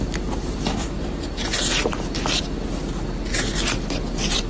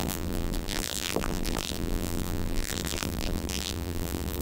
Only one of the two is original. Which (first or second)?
first